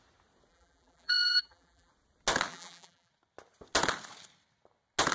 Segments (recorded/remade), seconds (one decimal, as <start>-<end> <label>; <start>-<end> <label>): 0.0-0.5 recorded; 0.5-1.9 remade; 1.9-2.5 recorded; 2.5-3.1 remade; 3.1-5.1 recorded